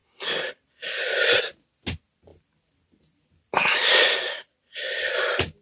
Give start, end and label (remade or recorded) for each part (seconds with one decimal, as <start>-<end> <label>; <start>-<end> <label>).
0.0-1.4 remade; 1.4-2.3 recorded; 2.3-5.1 remade; 5.1-5.6 recorded